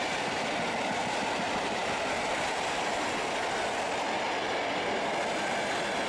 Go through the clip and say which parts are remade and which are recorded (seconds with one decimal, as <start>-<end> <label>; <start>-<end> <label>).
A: 0.0-6.1 recorded

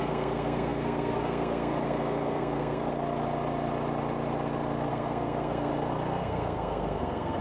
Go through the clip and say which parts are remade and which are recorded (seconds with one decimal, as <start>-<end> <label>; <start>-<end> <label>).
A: 0.0-2.9 remade; 2.9-4.9 recorded; 4.9-5.7 remade; 5.7-6.2 recorded; 6.2-7.4 remade

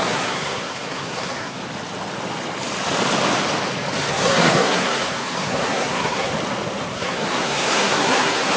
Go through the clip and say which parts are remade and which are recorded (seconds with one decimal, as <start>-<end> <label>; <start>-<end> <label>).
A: 0.0-1.6 remade; 1.6-4.1 recorded; 4.1-6.3 remade; 6.3-6.9 recorded; 6.9-8.6 remade

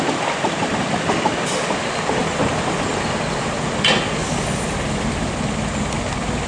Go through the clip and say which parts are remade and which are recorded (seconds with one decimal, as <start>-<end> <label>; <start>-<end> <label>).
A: 0.0-6.5 recorded